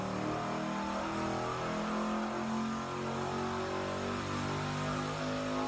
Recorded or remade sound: recorded